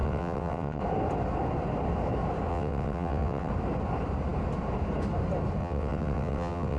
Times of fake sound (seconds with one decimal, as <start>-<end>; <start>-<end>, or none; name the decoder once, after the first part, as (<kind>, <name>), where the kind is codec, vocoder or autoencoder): 0.0-0.8 (vocoder, WaveNeXt); 2.5-3.5; 5.6-6.8